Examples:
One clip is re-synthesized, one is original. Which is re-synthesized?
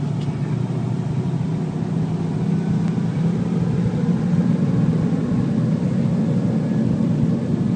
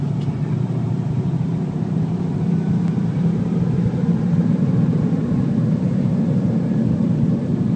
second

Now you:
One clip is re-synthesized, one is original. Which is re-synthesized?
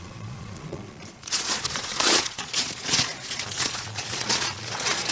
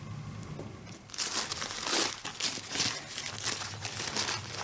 first